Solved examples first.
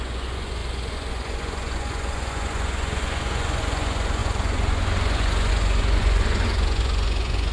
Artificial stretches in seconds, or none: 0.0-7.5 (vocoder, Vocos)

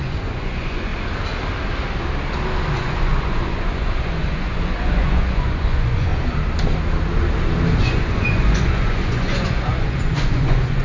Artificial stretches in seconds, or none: 0.0-0.9 (vocoder, Vocos); 2.7-6.1; 7.8-10.8

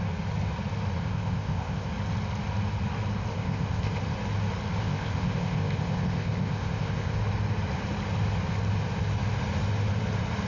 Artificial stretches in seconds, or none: 1.0-1.9 (codec, ZipCodec); 3.3-4.0; 4.8-7.2

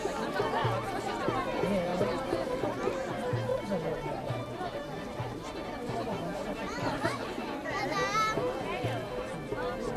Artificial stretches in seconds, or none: 1.9-2.5 (vocoder, BigVGAN v2); 3.5-7.8